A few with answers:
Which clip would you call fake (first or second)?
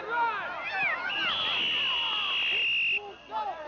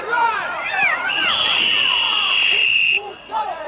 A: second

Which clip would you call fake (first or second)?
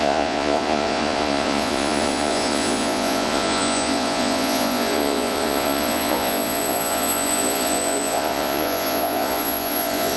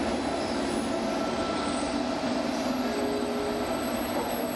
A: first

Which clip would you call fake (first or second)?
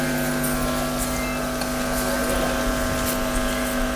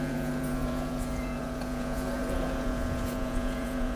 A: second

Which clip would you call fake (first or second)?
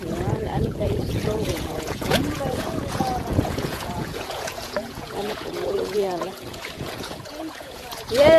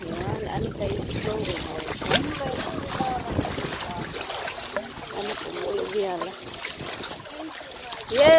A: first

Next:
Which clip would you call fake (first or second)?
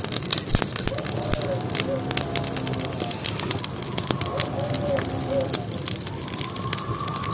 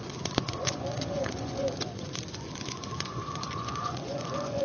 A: second